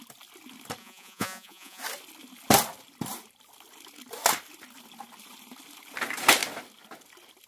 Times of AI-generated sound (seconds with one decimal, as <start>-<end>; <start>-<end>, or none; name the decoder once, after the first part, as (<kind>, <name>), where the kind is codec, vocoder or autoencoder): 0.8-1.8 (vocoder, Vocos)